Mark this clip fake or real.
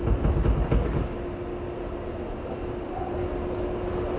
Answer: real